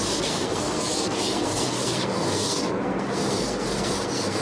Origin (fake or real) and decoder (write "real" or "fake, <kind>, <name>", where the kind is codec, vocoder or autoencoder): fake, codec, SNAC